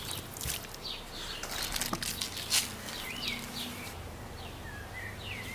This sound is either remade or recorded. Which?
recorded